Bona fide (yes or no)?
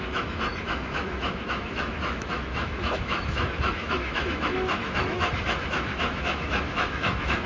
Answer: no